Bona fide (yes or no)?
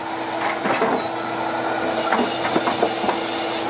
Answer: yes